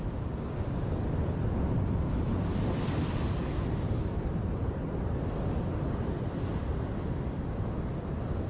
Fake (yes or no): no